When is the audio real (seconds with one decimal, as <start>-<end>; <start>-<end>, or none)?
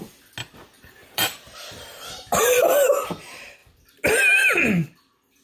0.0-1.0; 2.4-5.4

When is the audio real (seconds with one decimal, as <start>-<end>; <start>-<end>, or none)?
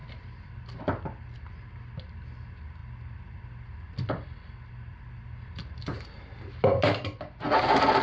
0.0-8.0